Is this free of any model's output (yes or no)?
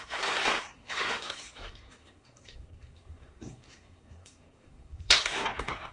no